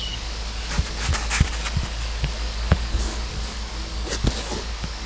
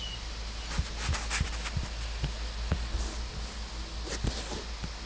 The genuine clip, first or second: second